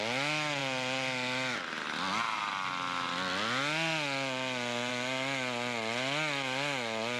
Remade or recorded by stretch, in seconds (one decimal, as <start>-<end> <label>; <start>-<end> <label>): 0.0-7.2 recorded